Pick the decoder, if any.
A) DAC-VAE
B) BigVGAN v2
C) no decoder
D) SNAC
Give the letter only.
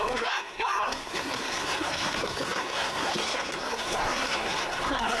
D